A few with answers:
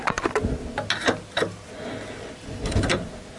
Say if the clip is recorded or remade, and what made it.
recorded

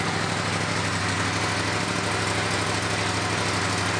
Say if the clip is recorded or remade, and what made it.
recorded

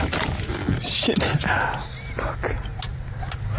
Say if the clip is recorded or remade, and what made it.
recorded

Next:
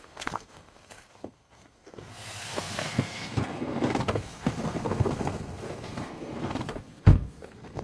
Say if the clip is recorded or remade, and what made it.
remade, codec, SNAC